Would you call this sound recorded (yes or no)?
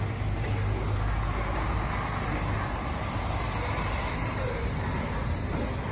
yes